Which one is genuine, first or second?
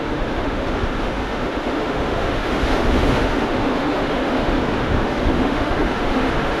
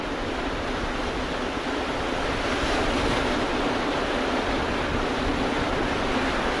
second